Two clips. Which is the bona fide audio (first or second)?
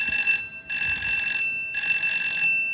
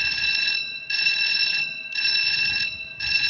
first